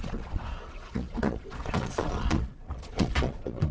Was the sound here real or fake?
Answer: fake